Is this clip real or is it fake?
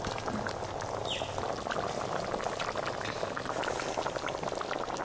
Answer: real